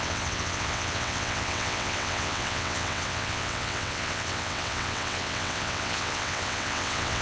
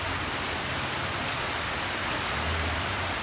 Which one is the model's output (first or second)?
first